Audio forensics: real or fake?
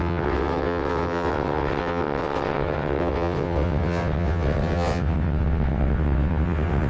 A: fake